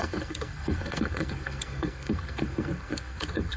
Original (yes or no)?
no